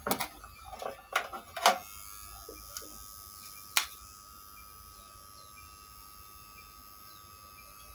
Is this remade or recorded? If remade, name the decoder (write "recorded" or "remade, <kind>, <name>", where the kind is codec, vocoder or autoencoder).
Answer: recorded